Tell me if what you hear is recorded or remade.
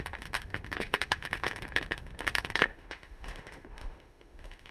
remade